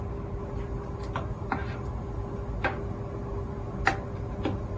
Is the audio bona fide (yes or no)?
yes